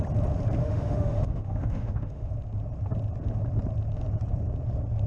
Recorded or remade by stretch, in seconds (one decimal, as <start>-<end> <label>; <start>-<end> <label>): 0.0-0.6 recorded; 0.6-2.3 remade; 2.3-5.1 recorded